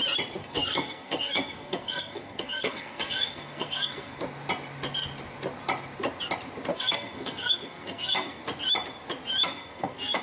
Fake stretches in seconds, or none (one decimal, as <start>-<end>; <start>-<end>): 0.4-4.2; 6.7-8.4; 9.4-10.2